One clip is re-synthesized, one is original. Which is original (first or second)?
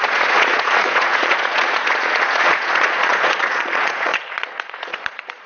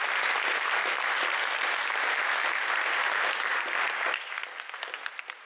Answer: second